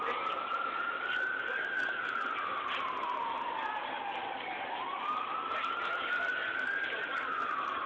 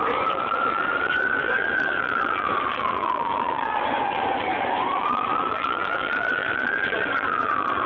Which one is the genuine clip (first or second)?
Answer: first